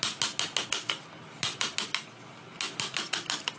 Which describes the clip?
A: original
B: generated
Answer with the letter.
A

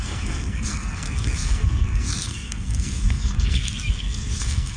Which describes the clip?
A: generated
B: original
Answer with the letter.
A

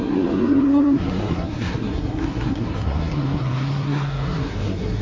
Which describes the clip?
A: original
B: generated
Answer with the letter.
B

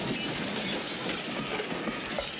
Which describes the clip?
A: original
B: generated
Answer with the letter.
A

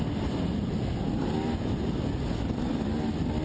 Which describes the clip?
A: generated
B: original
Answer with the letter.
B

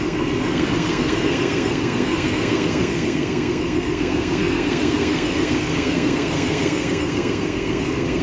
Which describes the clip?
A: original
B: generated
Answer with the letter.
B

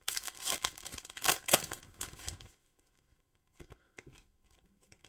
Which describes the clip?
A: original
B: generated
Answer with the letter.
B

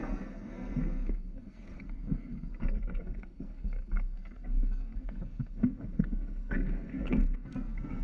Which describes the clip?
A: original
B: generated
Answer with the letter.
B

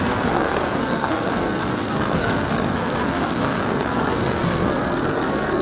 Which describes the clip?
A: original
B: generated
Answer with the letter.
B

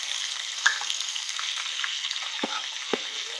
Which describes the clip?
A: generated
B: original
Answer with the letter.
A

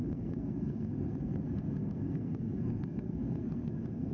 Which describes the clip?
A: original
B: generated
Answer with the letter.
B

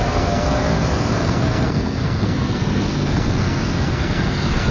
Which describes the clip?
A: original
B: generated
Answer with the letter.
B